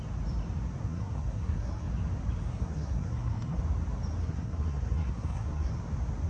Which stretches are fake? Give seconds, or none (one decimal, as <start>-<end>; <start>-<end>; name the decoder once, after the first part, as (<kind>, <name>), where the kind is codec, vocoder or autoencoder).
0.8-1.9 (codec, SNAC); 2.5-3.6; 4.2-5.7